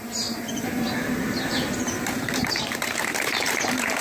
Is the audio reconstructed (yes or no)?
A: yes